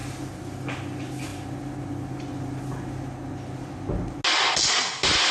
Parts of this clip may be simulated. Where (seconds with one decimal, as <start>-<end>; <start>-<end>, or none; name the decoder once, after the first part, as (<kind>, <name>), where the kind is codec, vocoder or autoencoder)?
none